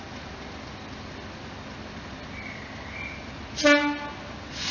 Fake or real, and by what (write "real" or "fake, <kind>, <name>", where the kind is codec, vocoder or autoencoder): real